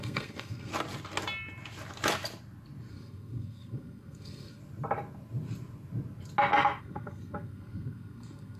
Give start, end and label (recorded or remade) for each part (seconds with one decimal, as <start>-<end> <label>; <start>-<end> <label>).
0.0-0.7 remade; 0.7-2.9 recorded; 2.9-4.6 remade; 4.6-6.8 recorded; 6.8-8.6 remade